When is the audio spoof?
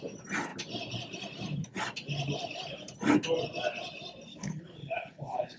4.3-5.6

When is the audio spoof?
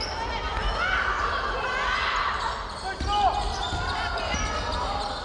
none